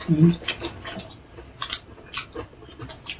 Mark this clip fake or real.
real